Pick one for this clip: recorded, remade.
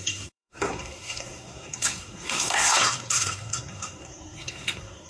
remade